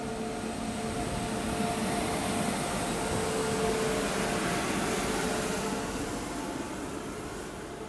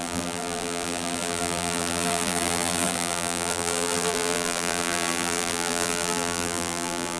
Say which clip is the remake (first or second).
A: second